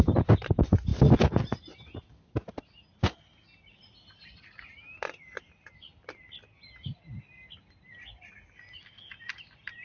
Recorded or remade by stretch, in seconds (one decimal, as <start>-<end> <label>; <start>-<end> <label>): 0.0-9.8 recorded